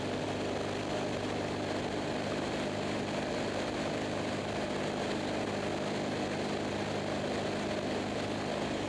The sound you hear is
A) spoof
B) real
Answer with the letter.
B